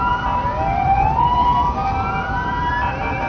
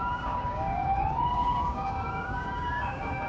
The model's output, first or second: second